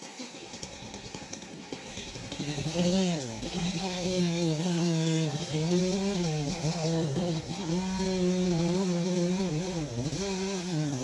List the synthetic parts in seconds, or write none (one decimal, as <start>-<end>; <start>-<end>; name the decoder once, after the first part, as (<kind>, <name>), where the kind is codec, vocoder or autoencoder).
0.0-5.8 (codec, SNAC); 6.5-7.7; 10.6-11.0